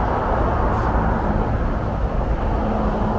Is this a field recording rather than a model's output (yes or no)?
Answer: yes